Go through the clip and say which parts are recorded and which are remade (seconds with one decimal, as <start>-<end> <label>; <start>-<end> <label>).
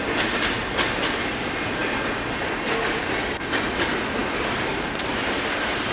0.0-5.9 recorded